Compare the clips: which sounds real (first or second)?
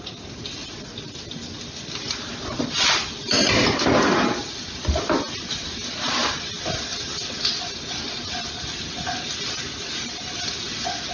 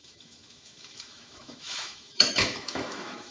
first